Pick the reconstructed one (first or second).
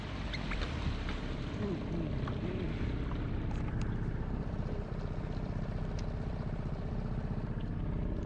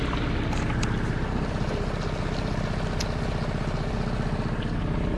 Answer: first